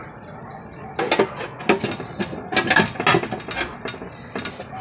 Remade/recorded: recorded